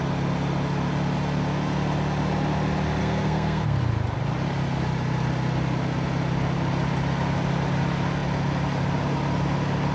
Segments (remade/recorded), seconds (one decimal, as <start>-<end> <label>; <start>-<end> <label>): 0.0-3.0 recorded; 3.0-3.8 remade; 3.8-9.9 recorded